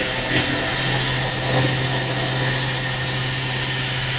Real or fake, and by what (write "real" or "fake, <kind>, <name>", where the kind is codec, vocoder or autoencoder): real